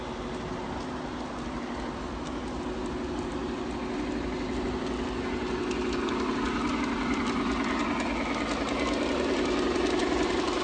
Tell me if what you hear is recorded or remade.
recorded